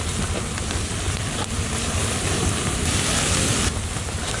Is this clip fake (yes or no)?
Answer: no